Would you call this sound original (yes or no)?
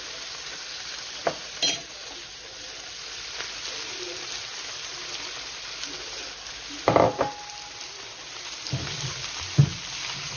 yes